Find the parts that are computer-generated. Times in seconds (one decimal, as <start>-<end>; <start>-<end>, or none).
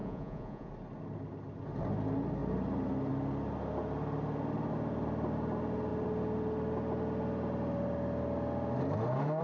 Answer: 0.0-0.7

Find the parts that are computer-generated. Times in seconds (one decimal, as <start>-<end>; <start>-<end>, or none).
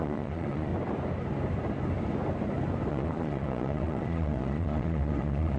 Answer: 0.0-0.7; 2.9-5.6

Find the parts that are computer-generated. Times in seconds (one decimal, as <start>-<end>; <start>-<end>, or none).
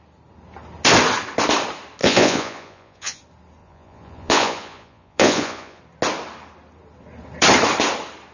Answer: 2.0-3.2; 3.6-5.8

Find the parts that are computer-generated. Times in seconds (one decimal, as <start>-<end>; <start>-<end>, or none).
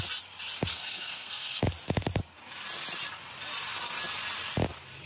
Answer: 0.7-1.6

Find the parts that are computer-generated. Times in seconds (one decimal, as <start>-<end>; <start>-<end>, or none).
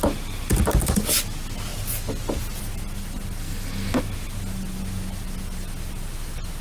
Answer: 3.4-4.0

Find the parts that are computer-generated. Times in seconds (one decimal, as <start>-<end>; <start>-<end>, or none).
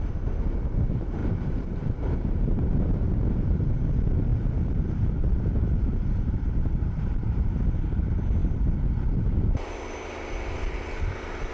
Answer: 1.2-3.1; 4.3-7.5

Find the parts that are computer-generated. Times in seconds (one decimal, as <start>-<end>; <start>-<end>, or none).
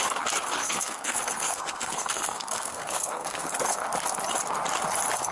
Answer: 0.6-3.8